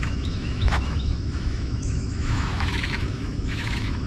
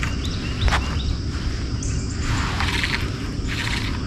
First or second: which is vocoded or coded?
first